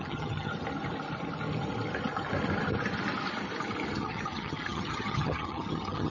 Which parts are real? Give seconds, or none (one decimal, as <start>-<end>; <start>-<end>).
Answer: 0.5-3.9